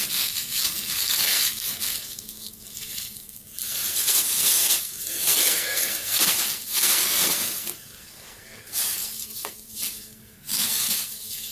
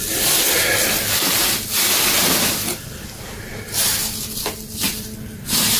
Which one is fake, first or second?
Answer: first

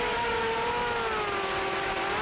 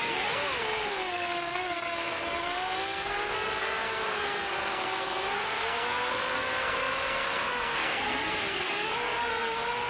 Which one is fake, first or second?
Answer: second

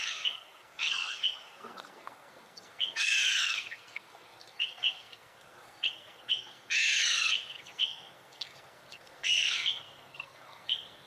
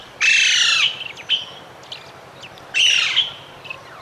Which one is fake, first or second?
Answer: first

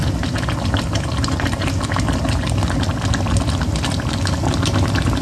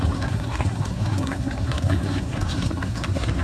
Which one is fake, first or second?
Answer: second